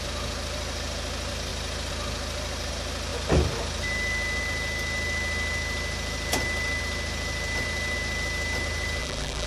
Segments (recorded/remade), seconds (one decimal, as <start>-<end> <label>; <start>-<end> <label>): 0.0-9.0 recorded; 9.0-9.5 remade